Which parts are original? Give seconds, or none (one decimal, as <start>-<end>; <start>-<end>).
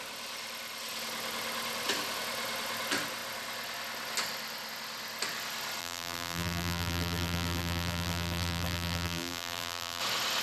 0.0-5.8; 10.0-10.4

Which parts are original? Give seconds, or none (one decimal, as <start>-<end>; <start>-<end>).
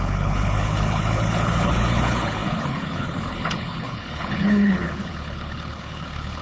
none